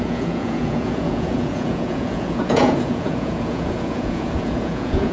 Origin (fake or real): fake